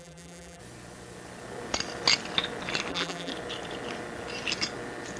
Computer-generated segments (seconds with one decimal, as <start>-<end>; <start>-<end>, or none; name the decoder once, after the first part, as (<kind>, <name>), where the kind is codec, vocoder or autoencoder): 0.0-0.6 (vocoder, BigVGAN v2); 2.9-3.3